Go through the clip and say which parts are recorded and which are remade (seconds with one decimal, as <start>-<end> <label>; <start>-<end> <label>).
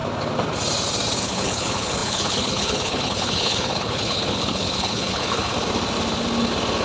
0.0-1.2 recorded; 1.2-5.5 remade; 5.5-6.8 recorded